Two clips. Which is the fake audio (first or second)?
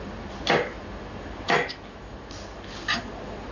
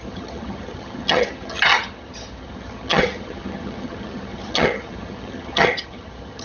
second